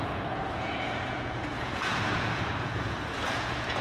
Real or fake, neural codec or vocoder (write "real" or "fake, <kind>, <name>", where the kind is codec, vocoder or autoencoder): fake, vocoder, Vocos